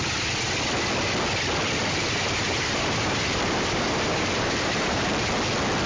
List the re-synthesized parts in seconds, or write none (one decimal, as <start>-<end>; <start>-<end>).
1.8-5.3